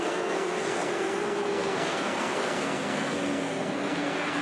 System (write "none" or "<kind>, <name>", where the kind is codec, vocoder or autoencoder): codec, SNAC